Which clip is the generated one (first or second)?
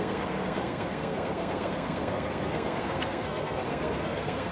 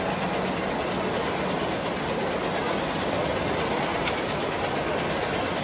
first